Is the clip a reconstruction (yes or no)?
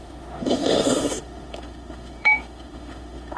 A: yes